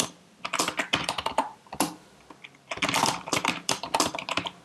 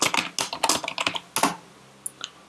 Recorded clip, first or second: second